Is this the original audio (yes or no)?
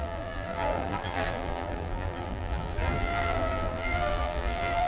no